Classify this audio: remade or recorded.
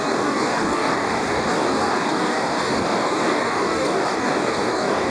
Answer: remade